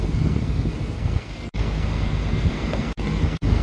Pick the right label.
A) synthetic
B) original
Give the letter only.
A